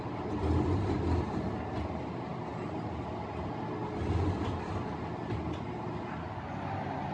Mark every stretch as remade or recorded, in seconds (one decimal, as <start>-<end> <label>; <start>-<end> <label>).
0.0-7.1 recorded

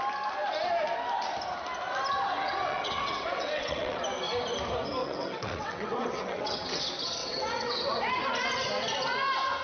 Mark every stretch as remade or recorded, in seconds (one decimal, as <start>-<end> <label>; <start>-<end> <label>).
0.0-2.4 recorded; 2.4-4.0 remade; 4.0-5.0 recorded; 5.0-6.8 remade; 6.8-7.2 recorded; 7.2-8.0 remade; 8.0-9.6 recorded

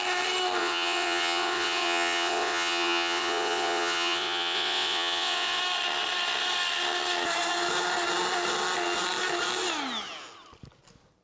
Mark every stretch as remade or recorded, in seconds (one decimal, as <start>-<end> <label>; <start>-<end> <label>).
0.0-0.6 recorded; 0.6-5.6 remade; 5.6-11.2 recorded

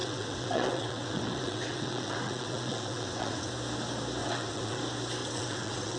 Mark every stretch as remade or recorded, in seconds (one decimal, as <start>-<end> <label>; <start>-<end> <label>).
0.0-3.5 remade; 3.5-4.2 recorded; 4.2-4.8 remade; 4.8-5.2 recorded; 5.2-6.0 remade

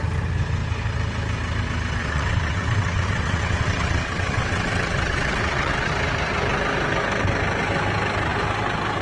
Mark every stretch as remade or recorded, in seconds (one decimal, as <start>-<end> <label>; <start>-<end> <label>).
0.0-2.0 recorded; 2.0-5.9 remade; 5.9-9.0 recorded

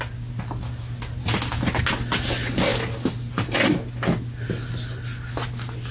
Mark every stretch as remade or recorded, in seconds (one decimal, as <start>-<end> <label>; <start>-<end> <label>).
0.0-5.9 recorded